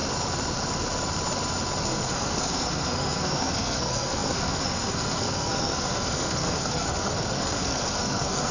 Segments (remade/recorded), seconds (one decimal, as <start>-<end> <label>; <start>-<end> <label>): 0.0-1.8 recorded; 1.8-8.5 remade